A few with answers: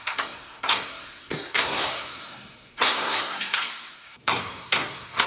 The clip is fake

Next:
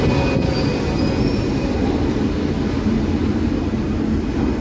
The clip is real